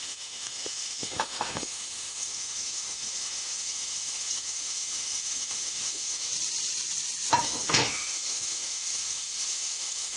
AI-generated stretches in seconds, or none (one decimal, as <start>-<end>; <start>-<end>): 0.0-6.3; 7.4-10.2

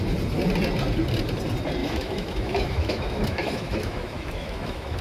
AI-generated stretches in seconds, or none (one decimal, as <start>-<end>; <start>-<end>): 1.8-5.0

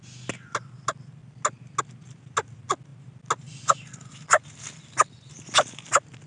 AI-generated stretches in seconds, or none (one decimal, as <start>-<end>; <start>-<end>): none

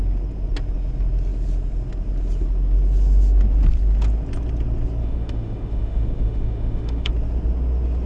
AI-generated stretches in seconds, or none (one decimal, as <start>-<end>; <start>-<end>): 5.0-7.1

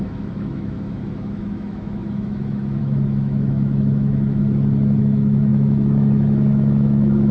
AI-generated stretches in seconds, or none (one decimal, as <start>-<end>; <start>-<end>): 0.0-4.4; 5.0-7.3

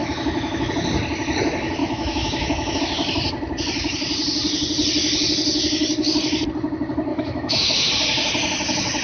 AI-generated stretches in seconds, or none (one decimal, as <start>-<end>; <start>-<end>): 0.0-0.7; 1.8-2.8; 7.1-7.9

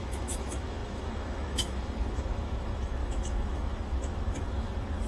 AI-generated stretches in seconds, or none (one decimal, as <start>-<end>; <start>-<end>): 0.0-5.1

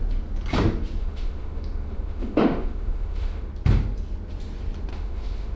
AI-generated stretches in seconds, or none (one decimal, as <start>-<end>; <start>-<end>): 1.0-3.5; 4.9-5.6